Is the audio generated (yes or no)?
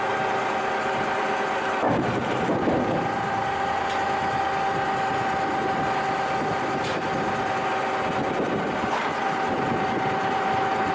no